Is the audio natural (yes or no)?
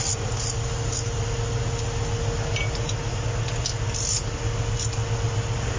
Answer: yes